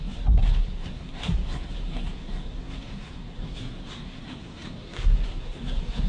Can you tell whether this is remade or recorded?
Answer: remade